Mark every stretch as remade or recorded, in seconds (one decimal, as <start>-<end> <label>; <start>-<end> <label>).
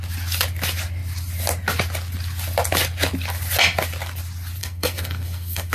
0.0-4.6 recorded; 4.6-5.7 remade